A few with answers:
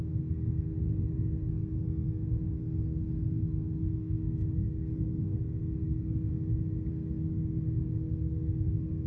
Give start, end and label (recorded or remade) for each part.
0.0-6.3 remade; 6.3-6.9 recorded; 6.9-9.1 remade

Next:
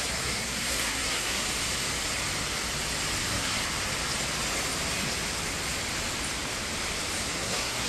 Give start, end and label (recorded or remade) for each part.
0.0-1.4 remade; 1.4-3.2 recorded; 3.2-3.6 remade; 3.6-7.3 recorded; 7.3-7.9 remade

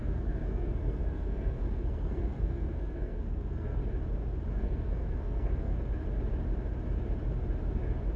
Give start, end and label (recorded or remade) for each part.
0.0-3.8 remade; 3.8-4.5 recorded; 4.5-5.9 remade; 5.9-8.2 recorded

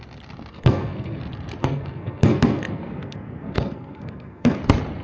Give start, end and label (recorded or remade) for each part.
0.0-0.5 recorded; 0.5-1.2 remade; 1.2-1.6 recorded; 1.6-4.6 remade; 4.6-5.0 recorded

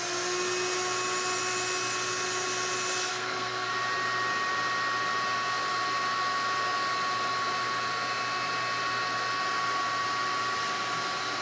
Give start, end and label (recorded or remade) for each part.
0.0-3.1 recorded; 3.1-3.7 remade; 3.7-11.4 recorded

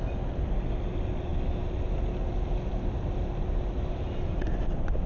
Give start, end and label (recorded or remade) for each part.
0.0-5.1 recorded